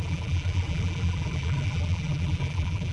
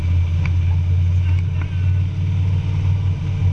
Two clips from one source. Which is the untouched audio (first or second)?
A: second